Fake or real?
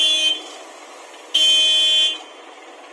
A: real